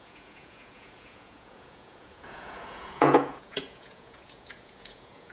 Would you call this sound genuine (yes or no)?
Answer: no